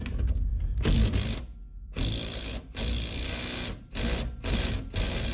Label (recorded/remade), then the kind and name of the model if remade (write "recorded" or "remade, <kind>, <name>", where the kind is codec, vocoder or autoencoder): recorded